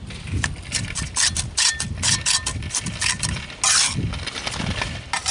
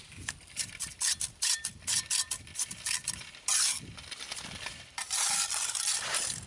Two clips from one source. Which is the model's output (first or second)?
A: second